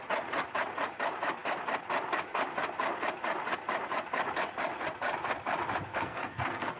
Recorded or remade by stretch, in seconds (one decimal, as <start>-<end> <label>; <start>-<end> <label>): 0.0-5.9 recorded; 5.9-6.8 remade